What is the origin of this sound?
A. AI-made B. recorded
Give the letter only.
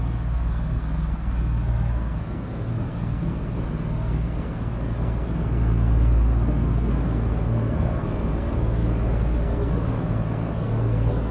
A